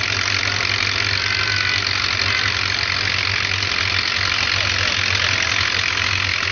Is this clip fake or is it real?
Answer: real